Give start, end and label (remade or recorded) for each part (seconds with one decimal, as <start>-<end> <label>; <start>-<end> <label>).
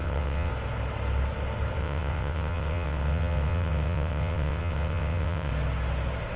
0.0-0.5 remade; 0.5-1.8 recorded; 1.8-5.5 remade; 5.5-6.4 recorded